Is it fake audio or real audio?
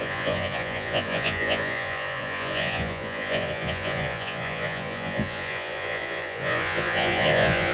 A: fake